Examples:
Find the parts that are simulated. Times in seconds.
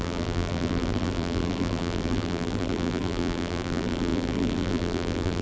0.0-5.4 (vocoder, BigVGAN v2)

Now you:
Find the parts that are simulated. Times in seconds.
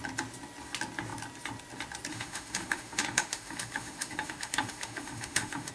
2.1-5.7 (autoencoder, DAC-VAE)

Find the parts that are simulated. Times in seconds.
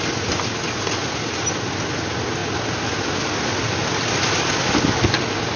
none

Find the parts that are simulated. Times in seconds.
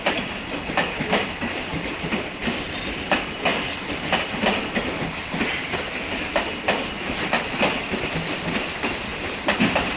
1.7-2.4 (vocoder, BigVGAN v2)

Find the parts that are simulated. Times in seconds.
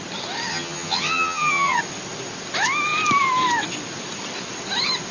0.5-1.8 (vocoder, HiFi-GAN)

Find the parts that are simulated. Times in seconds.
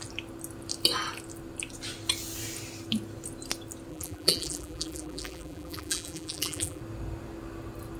3.9-6.8 (vocoder, BigVGAN v2)